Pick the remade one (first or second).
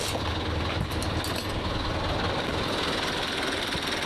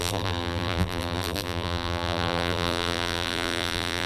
second